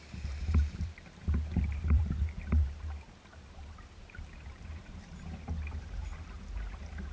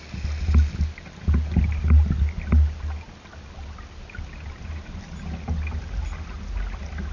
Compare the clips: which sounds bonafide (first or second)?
second